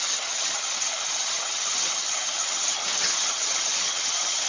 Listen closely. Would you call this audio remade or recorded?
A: remade